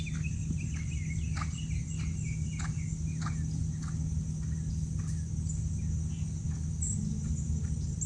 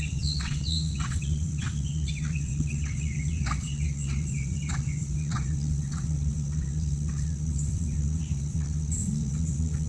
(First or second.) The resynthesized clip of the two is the second